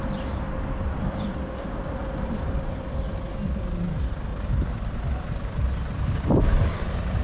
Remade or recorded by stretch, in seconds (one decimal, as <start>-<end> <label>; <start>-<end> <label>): 0.0-2.0 remade; 2.0-3.9 recorded; 3.9-4.3 remade; 4.3-5.9 recorded; 5.9-7.2 remade